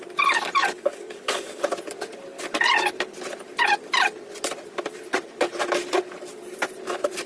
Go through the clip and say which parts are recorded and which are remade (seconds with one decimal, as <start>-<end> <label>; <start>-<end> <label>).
0.0-0.6 recorded; 0.6-1.7 remade; 1.7-7.3 recorded